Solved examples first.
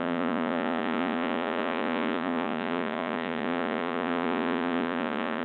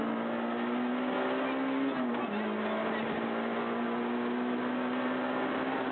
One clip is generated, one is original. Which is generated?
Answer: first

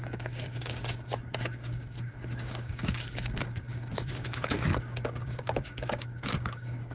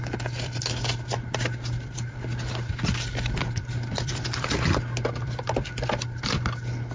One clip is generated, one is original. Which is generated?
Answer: first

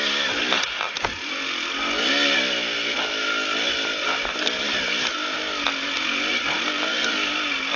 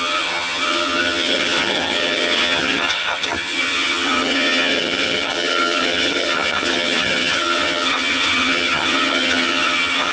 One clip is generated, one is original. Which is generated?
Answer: second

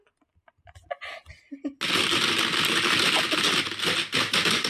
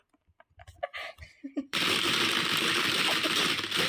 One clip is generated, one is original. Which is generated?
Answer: second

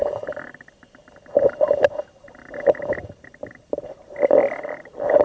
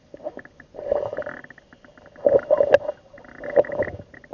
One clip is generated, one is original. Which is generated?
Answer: first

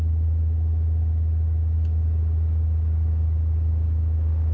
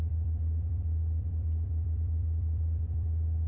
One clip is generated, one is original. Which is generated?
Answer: second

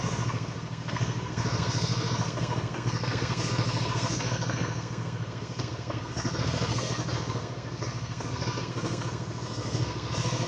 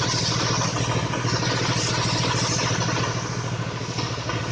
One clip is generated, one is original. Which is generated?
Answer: first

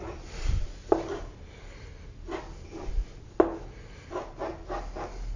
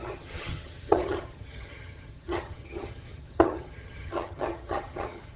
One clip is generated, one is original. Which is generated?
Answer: second